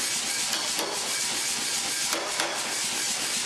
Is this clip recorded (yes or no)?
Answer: yes